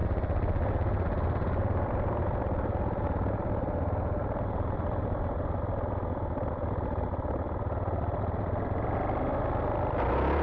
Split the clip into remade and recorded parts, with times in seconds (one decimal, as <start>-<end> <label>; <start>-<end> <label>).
0.0-10.4 recorded